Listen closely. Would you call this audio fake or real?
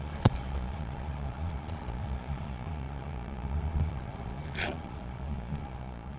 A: fake